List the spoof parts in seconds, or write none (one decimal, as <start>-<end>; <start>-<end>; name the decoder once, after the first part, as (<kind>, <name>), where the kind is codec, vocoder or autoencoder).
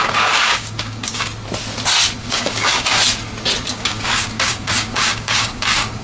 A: 0.0-1.3 (codec, DAC); 2.2-3.0; 3.7-6.0